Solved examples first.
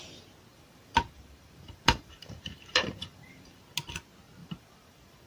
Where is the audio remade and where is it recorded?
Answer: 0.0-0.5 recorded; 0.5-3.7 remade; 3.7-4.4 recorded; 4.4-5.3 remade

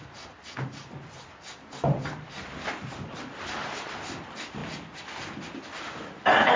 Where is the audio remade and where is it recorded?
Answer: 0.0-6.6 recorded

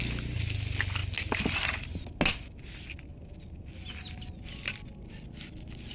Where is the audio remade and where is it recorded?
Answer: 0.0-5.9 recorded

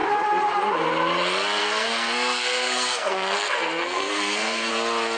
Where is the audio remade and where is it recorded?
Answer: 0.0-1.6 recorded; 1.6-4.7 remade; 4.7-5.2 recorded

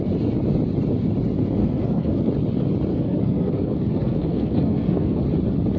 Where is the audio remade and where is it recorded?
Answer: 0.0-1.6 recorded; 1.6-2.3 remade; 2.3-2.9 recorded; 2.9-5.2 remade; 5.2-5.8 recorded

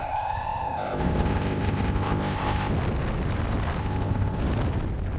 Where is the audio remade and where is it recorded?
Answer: 0.0-2.7 remade; 2.7-3.8 recorded; 3.8-4.4 remade; 4.4-5.2 recorded